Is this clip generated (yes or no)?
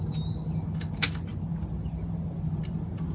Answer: no